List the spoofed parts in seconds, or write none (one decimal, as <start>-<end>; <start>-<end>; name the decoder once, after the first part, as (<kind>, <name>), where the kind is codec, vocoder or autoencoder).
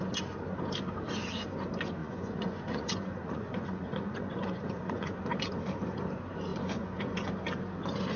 2.0-5.2 (vocoder, Vocos); 6.5-7.3